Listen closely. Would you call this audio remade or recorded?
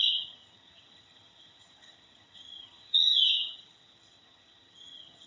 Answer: remade